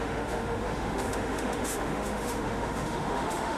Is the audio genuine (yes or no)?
no